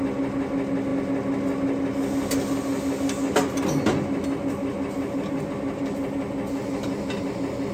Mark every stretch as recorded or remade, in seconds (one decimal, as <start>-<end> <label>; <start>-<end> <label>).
0.0-7.7 recorded